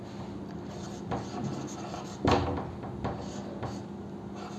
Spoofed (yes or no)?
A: no